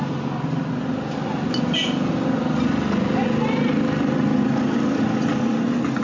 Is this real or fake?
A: real